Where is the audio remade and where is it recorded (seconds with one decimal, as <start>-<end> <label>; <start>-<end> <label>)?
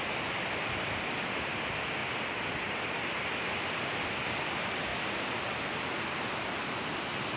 0.0-7.4 recorded